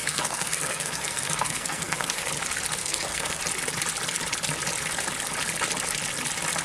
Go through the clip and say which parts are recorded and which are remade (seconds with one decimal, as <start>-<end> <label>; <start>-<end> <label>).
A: 0.0-2.3 remade; 2.3-2.8 recorded; 2.8-3.4 remade; 3.4-6.6 recorded

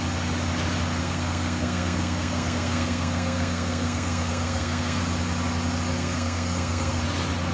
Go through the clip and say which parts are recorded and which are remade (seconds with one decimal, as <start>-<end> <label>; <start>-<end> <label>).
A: 0.0-1.0 recorded; 1.0-5.0 remade; 5.0-5.9 recorded; 5.9-7.0 remade; 7.0-7.5 recorded

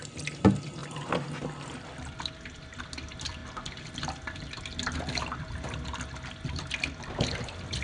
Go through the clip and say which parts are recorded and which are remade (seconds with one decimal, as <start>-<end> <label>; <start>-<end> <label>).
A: 0.0-7.8 recorded

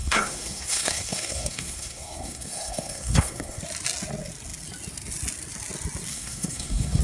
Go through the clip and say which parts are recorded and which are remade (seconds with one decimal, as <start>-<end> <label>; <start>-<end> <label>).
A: 0.0-3.6 remade; 3.6-6.1 recorded; 6.1-7.0 remade

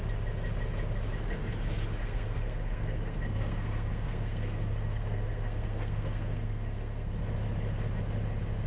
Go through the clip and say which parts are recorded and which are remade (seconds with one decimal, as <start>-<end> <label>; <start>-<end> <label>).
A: 0.0-2.0 recorded; 2.0-7.2 remade; 7.2-8.7 recorded

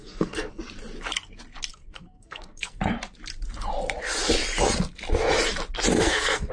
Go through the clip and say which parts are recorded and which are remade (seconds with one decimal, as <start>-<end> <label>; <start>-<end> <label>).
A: 0.0-0.6 remade; 0.6-1.7 recorded; 1.7-2.8 remade; 2.8-5.9 recorded; 5.9-6.5 remade